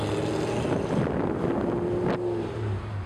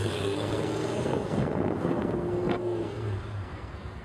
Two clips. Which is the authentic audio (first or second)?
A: first